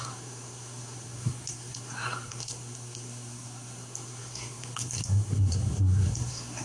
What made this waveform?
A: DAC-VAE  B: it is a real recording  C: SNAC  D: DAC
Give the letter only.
C